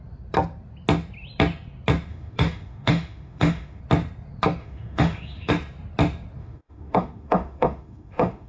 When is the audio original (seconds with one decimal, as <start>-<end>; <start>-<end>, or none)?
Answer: 0.0-2.1; 3.8-4.6; 5.5-6.4